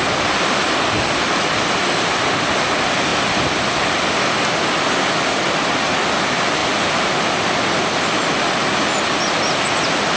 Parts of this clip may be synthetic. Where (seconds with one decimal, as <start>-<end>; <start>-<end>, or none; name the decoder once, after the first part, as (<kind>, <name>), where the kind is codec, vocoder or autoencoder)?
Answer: none